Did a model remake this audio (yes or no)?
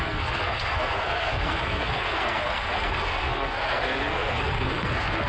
yes